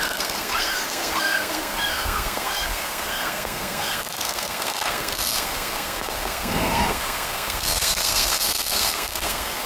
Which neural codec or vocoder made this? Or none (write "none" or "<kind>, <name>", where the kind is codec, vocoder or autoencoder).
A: codec, SNAC